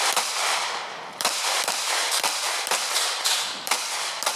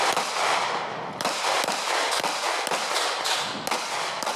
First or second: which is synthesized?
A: first